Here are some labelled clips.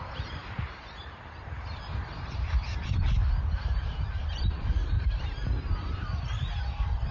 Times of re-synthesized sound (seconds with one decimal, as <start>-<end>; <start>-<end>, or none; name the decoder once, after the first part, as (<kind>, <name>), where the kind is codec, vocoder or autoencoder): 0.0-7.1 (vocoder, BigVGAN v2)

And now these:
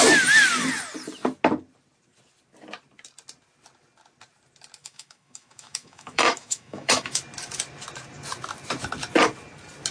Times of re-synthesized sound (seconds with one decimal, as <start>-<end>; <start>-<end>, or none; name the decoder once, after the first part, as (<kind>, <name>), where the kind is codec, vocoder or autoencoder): 4.8-7.2 (autoencoder, DAC-VAE)

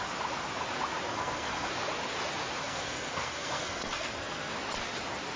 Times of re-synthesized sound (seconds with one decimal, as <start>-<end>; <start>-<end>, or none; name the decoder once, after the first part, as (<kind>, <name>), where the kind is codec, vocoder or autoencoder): 1.1-1.7 (codec, SNAC); 2.6-4.5

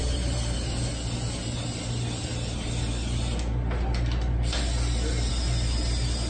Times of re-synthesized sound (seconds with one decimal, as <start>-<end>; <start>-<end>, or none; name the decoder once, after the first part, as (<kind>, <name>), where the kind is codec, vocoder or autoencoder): 0.0-0.9 (vocoder, BigVGAN v2)